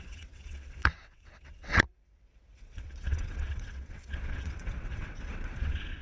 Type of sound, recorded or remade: remade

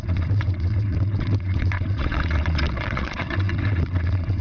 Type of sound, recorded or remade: remade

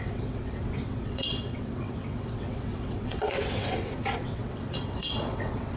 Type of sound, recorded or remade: remade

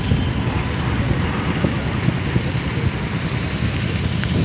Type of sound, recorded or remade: recorded